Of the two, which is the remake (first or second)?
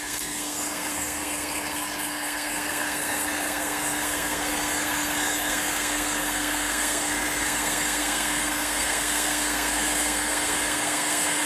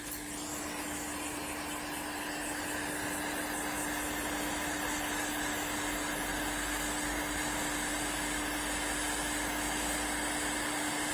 first